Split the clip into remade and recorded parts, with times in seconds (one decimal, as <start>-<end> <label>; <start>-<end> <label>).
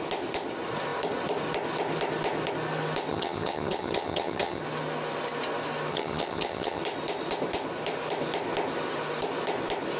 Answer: 0.0-3.1 recorded; 3.1-4.6 remade; 4.6-5.9 recorded; 5.9-6.8 remade; 6.8-10.0 recorded